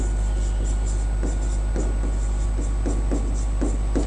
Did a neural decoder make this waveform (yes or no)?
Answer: no